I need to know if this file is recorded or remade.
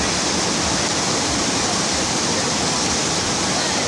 recorded